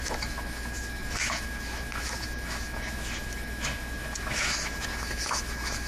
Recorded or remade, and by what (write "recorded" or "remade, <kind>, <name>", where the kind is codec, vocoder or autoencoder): remade, autoencoder, DAC-VAE